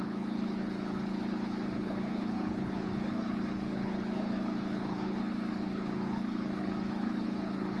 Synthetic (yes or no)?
yes